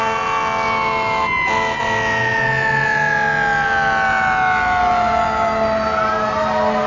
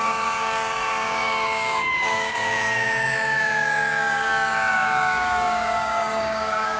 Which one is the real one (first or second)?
first